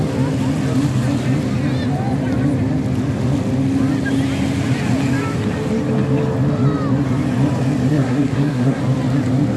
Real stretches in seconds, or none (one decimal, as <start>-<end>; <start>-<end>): 0.0-7.9; 8.8-9.6